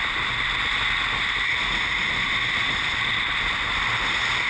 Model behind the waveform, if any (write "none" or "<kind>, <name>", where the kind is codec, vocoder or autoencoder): none